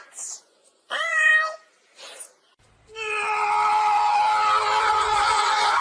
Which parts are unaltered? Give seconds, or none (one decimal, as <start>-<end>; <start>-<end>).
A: 1.3-4.8